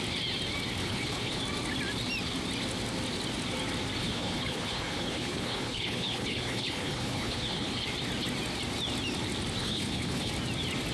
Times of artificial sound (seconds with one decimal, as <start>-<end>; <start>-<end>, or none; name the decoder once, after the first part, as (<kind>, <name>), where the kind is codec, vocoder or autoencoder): 0.8-1.4 (codec, HILCodec); 4.0-7.8; 9.6-10.3